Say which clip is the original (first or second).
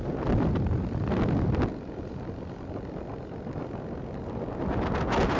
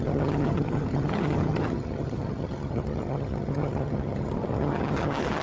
first